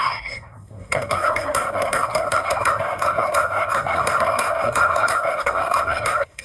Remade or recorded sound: remade